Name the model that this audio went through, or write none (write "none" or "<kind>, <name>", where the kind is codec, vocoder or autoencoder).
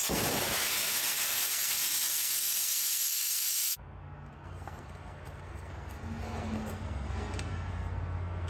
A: codec, SNAC